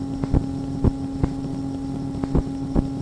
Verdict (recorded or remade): recorded